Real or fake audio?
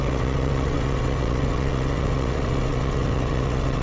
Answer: fake